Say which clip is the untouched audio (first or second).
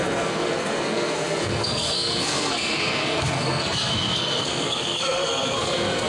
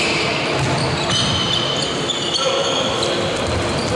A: second